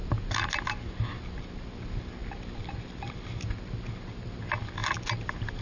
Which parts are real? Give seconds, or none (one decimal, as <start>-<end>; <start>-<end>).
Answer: 0.0-5.6